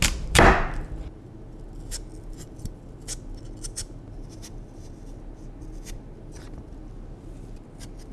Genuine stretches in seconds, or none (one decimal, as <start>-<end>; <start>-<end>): 0.0-8.1